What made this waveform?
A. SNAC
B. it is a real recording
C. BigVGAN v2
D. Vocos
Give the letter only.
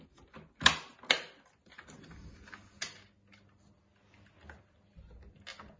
B